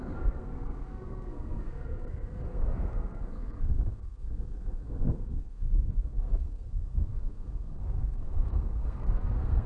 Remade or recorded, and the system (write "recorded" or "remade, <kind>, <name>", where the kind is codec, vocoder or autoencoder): remade, codec, SNAC